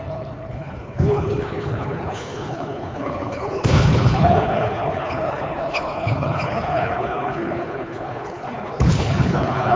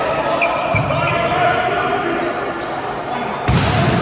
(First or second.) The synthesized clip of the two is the first